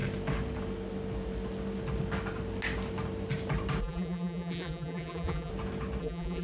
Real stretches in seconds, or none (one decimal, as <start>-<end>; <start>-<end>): 0.0-3.8; 5.5-6.0